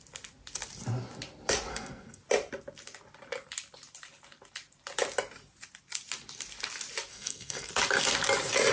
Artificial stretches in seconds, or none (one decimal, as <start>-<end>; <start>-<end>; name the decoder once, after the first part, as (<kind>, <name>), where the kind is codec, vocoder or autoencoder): 1.7-2.2 (codec, SNAC); 7.1-7.7